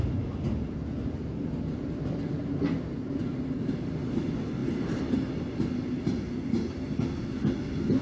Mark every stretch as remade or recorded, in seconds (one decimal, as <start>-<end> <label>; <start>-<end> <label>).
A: 0.0-8.0 recorded